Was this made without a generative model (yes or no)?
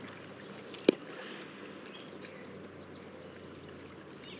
yes